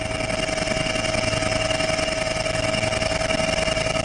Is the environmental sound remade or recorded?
recorded